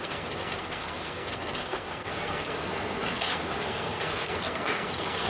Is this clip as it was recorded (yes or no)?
no